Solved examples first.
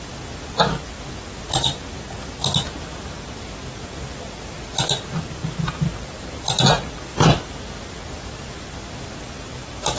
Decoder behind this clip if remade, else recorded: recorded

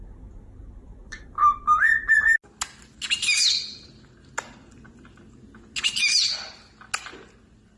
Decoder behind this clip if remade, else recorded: recorded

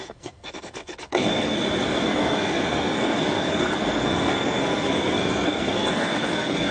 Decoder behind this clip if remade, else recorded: remade, codec, SNAC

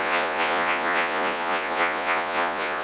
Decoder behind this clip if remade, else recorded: remade, vocoder, Vocos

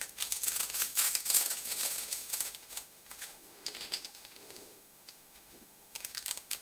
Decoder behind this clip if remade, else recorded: remade, autoencoder, DAC-VAE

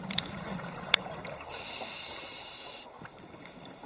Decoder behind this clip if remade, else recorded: remade, vocoder, BigVGAN v2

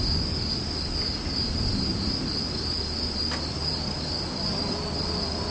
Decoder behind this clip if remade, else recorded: recorded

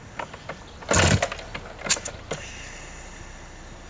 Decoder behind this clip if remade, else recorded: recorded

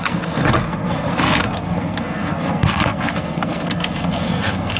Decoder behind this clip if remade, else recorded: remade, codec, SNAC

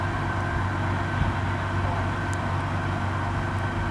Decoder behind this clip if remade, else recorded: recorded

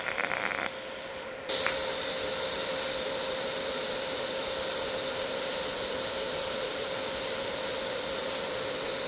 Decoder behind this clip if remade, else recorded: recorded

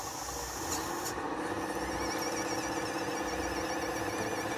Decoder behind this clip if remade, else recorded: recorded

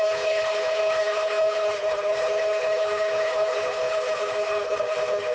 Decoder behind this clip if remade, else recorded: remade, codec, HILCodec